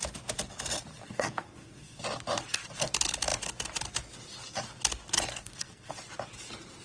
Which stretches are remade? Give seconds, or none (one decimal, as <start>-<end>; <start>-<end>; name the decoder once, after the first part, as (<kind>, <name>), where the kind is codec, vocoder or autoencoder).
0.9-2.0 (codec, SNAC); 5.3-5.9